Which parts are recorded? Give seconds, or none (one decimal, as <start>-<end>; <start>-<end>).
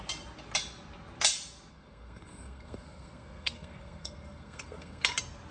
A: 0.0-1.7; 5.0-5.5